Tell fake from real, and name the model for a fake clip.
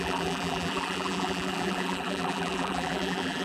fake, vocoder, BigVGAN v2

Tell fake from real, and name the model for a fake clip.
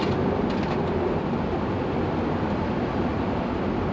real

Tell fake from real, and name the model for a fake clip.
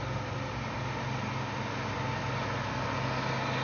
real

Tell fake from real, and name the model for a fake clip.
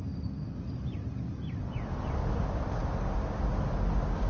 real